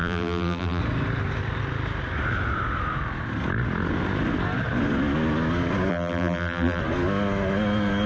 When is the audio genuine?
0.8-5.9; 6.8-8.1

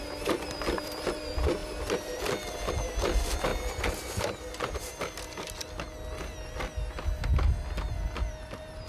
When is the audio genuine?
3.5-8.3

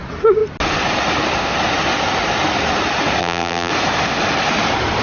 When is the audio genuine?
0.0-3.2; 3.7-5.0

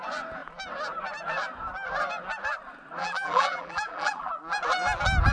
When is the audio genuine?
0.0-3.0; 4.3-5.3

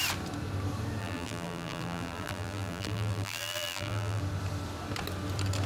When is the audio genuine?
0.0-1.0; 4.2-5.7

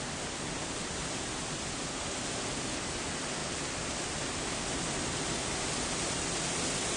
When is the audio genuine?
0.0-0.8; 1.8-3.4; 4.0-7.0

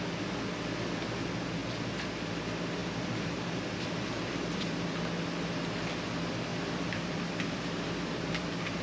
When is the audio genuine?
0.0-1.6; 2.4-2.8; 4.9-6.5

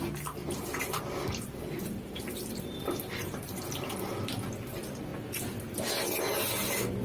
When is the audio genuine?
0.0-0.4; 3.9-7.0